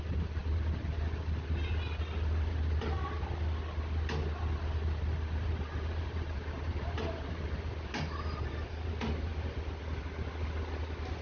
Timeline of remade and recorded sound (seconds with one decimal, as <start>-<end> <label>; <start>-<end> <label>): 0.0-5.1 recorded; 5.1-8.9 remade; 8.9-11.2 recorded